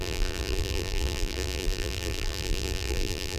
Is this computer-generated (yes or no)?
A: yes